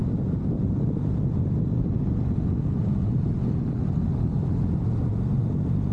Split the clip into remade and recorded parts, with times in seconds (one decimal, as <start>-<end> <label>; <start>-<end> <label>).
0.0-5.9 recorded